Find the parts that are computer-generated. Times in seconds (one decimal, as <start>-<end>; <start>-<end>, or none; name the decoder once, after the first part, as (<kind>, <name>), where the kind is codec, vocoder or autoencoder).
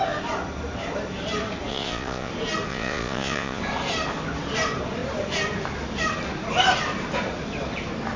1.7-2.3 (vocoder, Vocos); 2.7-3.6